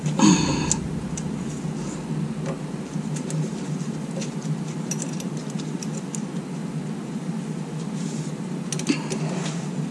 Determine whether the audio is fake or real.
real